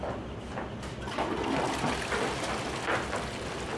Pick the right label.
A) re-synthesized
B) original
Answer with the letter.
B